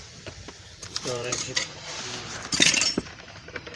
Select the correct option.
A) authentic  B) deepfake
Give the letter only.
B